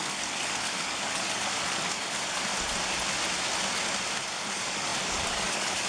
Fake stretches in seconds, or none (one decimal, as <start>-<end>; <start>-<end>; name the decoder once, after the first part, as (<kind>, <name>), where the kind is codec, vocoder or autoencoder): 0.0-2.5 (codec, DAC); 4.3-5.9